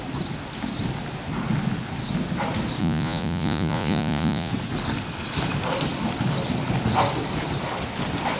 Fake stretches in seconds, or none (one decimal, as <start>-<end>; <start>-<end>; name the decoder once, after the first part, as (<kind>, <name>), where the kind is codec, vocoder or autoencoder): 2.8-4.5 (vocoder, Vocos)